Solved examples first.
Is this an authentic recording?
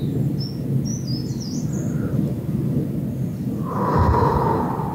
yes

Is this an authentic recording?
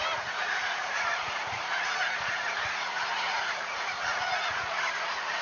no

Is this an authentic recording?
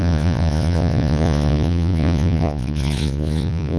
no